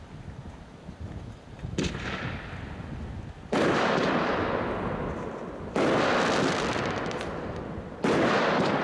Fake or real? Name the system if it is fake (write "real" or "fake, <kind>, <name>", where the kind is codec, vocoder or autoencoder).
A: real